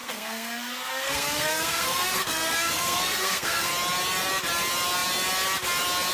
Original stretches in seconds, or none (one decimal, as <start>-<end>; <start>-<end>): 3.7-6.1